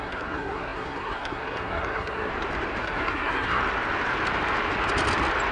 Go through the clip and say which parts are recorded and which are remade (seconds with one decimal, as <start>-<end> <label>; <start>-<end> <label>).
0.0-2.3 remade; 2.3-2.8 recorded; 2.8-3.6 remade; 3.6-5.5 recorded